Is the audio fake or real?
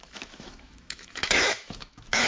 fake